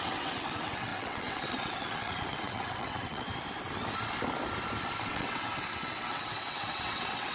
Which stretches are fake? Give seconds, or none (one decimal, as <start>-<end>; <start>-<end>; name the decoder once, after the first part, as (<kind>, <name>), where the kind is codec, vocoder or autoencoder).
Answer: 0.0-3.3 (vocoder, WaveNeXt); 5.0-7.3